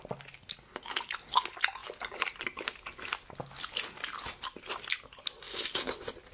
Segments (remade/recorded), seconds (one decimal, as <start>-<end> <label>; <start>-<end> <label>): 0.0-6.3 recorded